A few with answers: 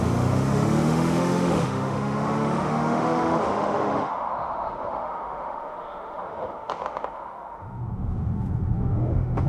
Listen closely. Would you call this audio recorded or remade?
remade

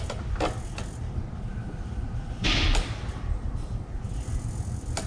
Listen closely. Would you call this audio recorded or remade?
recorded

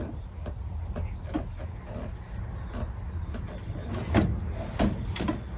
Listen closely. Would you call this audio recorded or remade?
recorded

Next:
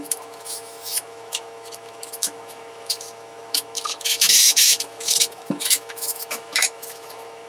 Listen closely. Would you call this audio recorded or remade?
remade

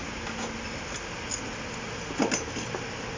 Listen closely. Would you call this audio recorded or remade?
recorded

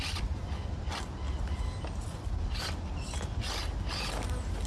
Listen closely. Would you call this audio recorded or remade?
recorded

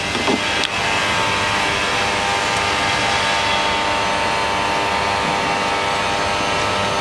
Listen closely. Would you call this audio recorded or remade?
recorded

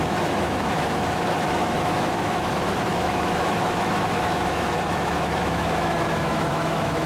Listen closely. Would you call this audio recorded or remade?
remade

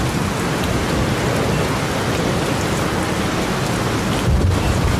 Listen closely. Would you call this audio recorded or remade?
recorded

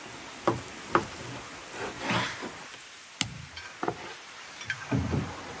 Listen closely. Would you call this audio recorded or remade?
recorded